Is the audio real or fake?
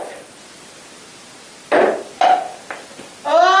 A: real